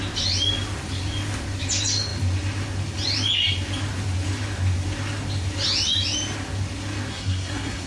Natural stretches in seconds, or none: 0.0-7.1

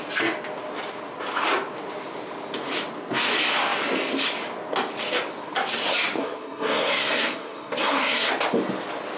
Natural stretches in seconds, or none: 0.0-6.2; 8.3-9.2